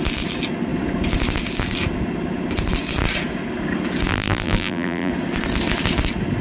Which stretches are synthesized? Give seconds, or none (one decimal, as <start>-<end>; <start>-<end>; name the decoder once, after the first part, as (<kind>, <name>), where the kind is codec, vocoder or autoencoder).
4.1-5.1 (vocoder, BigVGAN v2)